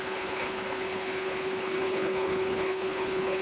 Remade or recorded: remade